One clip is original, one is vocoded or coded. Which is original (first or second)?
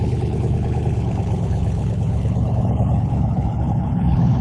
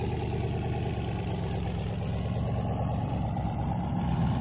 second